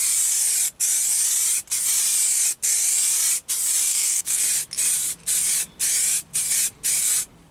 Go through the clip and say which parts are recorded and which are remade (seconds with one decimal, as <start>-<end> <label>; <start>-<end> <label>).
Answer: 0.0-3.9 recorded; 3.9-4.4 remade; 4.4-7.5 recorded